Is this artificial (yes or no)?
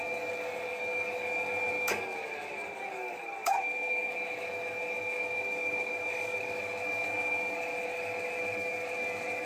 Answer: yes